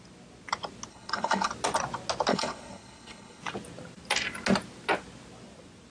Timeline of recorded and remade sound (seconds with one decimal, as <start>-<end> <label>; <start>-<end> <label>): 0.0-0.9 recorded; 0.9-1.5 remade; 1.5-2.3 recorded; 2.3-3.4 remade; 3.4-5.9 recorded